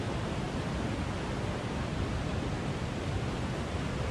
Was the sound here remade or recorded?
remade